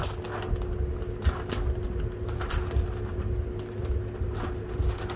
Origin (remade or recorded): recorded